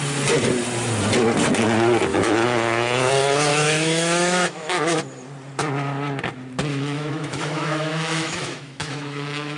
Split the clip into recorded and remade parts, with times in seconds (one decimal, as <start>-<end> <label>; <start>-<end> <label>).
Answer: 0.0-2.1 recorded; 2.1-3.1 remade; 3.1-3.5 recorded; 3.5-5.0 remade; 5.0-6.7 recorded; 6.7-9.6 remade